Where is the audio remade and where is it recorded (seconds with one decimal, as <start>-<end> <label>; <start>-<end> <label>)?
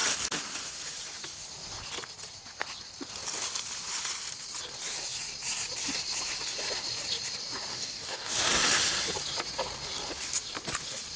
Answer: 0.0-7.7 recorded; 7.7-8.3 remade; 8.3-11.2 recorded